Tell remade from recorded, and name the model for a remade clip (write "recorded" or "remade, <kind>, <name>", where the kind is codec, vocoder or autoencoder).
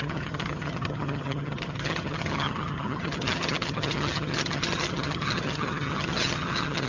remade, vocoder, HiFi-GAN